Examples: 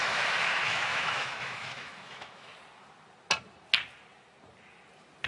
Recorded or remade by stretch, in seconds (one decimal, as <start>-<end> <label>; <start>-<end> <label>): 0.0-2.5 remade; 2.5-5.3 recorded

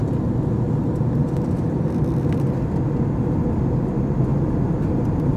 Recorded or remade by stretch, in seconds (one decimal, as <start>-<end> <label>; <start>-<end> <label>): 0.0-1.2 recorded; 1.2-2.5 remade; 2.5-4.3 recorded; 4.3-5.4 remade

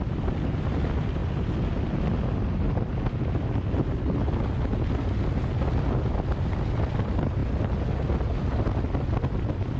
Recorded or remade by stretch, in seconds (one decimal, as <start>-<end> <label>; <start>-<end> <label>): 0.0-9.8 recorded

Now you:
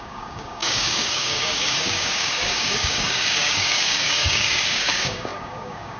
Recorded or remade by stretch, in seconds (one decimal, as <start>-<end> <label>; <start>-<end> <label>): 0.0-6.0 remade